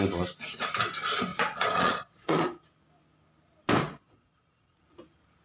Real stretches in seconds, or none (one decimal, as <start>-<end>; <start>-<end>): 0.0-1.3; 2.6-3.8; 4.8-5.4